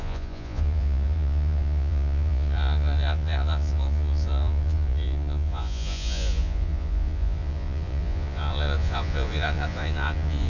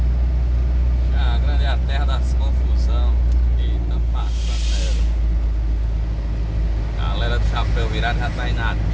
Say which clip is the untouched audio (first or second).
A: second